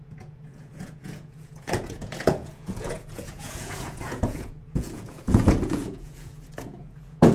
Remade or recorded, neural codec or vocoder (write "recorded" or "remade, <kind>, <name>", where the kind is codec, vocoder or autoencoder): remade, vocoder, Vocos